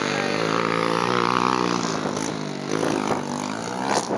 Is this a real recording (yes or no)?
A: yes